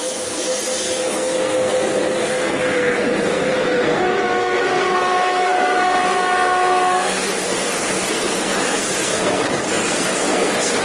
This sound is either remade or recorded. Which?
remade